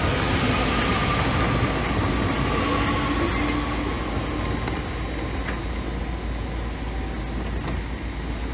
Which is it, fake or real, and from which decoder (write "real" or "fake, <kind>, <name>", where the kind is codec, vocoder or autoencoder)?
real